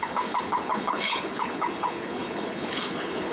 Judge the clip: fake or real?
fake